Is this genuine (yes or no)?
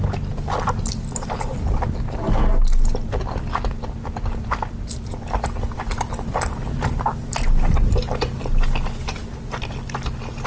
yes